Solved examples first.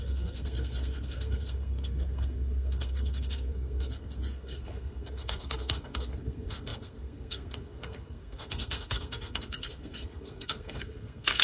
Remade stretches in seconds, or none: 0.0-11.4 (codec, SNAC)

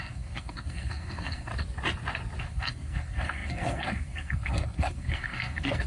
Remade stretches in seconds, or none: 0.0-1.5 (codec, SNAC); 2.4-5.9